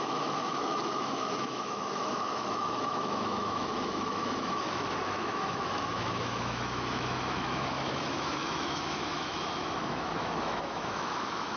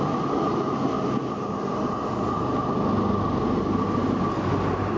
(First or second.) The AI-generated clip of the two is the first